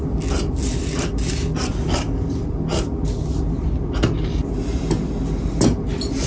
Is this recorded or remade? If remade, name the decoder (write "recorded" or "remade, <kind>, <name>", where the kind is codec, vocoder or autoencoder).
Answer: recorded